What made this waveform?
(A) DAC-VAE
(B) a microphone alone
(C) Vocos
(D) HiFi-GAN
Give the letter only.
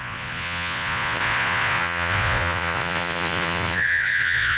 C